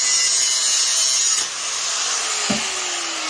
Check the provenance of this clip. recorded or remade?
recorded